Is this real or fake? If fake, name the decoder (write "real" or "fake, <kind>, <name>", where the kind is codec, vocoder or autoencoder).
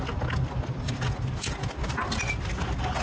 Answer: real